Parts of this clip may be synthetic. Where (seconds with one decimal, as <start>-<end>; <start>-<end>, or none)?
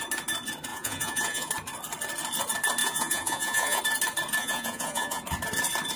0.7-1.5; 2.8-3.8; 4.4-5.2